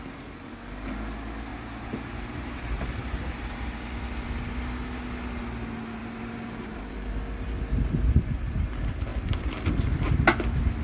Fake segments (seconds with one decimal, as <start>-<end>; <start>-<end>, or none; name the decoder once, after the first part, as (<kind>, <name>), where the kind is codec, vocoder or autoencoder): 1.5-3.6 (vocoder, BigVGAN v2); 6.0-6.8